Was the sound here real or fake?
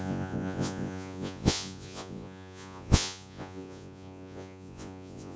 fake